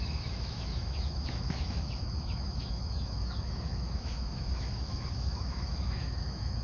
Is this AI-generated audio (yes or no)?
yes